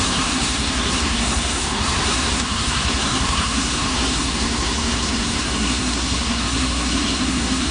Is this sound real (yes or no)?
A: no